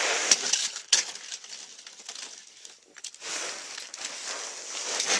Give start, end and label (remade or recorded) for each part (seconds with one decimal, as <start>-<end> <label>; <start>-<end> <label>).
0.0-0.6 recorded; 0.6-1.2 remade; 1.2-5.2 recorded